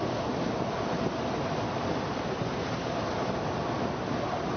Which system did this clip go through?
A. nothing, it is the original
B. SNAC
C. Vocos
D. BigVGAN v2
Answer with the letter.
A